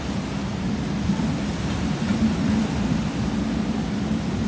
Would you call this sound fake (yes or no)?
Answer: no